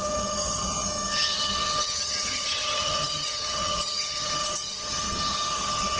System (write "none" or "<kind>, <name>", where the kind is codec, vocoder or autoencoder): vocoder, HiFi-GAN